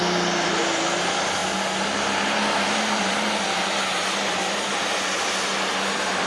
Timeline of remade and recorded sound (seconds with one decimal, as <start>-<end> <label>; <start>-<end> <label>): 0.0-6.3 recorded

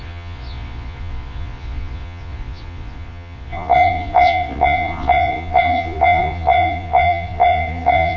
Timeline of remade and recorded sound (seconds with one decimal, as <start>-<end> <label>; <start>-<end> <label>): 0.0-8.2 remade

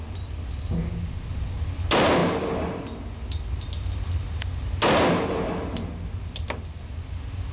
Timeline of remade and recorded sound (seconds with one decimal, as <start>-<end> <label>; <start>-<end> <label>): 0.0-7.5 recorded